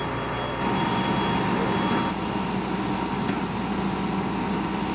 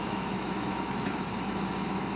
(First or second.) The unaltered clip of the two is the first